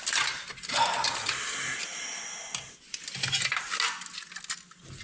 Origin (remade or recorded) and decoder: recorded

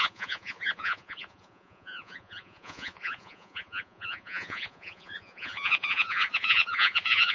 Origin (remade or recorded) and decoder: remade, vocoder, Vocos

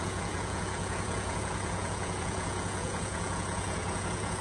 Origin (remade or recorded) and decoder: remade, vocoder, Vocos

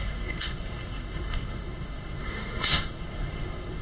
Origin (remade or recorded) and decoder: remade, codec, SNAC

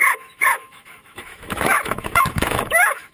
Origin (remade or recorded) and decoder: remade, autoencoder, DAC-VAE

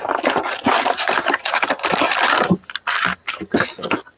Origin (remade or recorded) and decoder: recorded